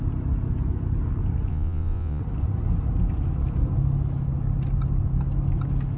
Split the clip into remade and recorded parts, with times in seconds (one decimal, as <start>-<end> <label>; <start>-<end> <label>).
0.0-1.5 recorded; 1.5-2.2 remade; 2.2-6.0 recorded